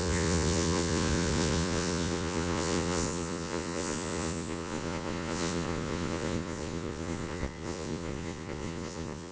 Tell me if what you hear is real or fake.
fake